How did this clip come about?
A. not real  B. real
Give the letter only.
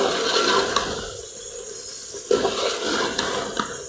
B